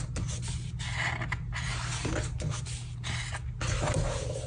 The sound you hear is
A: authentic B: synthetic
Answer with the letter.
A